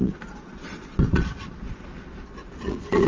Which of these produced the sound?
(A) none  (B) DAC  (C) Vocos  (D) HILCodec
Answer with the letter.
C